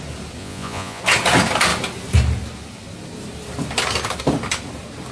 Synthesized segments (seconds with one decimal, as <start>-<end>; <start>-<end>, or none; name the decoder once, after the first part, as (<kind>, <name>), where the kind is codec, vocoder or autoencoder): 0.4-1.0 (vocoder, Vocos)